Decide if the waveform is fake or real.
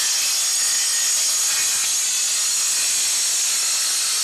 real